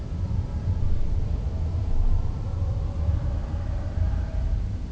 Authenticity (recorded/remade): remade